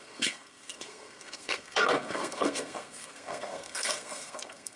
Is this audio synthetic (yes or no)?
yes